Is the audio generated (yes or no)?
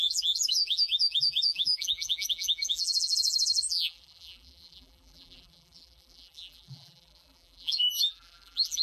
yes